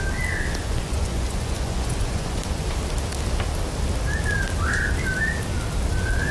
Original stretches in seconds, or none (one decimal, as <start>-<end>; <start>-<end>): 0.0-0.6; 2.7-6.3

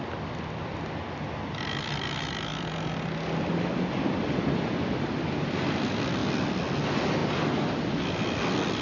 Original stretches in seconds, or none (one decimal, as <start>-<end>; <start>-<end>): 0.0-8.8

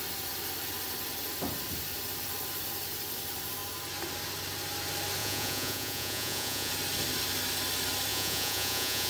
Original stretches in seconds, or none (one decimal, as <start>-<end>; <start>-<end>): 0.0-5.2; 6.7-8.1